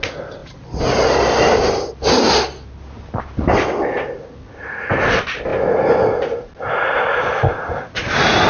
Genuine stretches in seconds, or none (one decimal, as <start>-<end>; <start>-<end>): 0.0-8.5